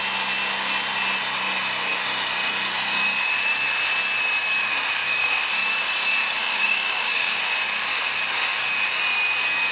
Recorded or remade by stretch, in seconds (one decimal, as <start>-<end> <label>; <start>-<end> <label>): 0.0-5.0 recorded; 5.0-5.5 remade; 5.5-6.4 recorded; 6.4-7.5 remade; 7.5-9.7 recorded